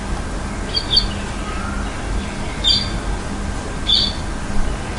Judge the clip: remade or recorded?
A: recorded